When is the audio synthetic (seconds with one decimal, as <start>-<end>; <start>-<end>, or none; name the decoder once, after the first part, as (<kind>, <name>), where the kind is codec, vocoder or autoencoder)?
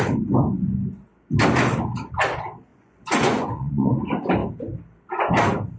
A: 2.7-4.0 (vocoder, Vocos)